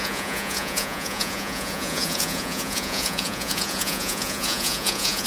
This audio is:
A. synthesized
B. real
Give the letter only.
A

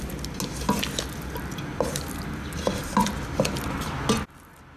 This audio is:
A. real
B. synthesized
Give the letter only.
A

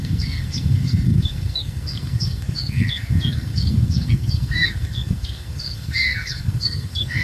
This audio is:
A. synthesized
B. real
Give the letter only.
A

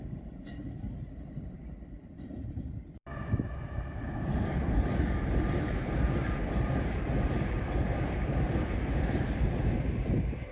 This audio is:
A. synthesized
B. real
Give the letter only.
A